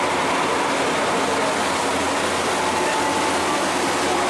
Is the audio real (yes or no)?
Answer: yes